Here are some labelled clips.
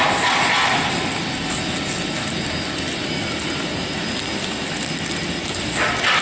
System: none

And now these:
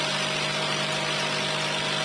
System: none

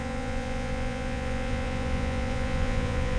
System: vocoder, Vocos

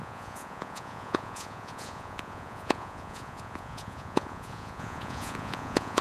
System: vocoder, Vocos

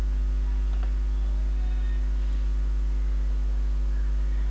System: none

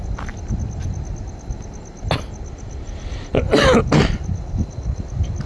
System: none